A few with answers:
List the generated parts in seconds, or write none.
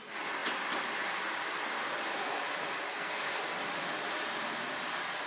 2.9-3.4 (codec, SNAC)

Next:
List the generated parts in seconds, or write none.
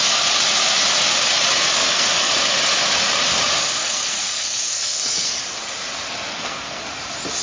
1.8-2.3 (codec, SNAC); 3.8-5.4; 6.3-6.8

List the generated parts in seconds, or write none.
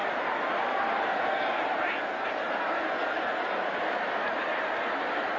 none